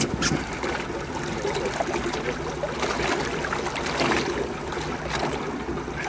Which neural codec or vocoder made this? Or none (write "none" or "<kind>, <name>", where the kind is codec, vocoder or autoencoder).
none